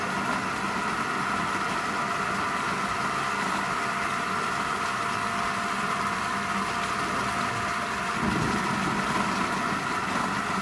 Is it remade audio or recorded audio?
recorded